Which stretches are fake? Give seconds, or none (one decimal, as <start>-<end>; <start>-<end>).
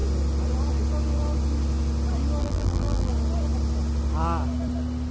2.4-3.1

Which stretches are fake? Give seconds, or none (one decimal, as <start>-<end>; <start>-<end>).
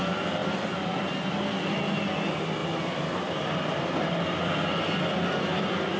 0.4-1.9; 2.6-4.8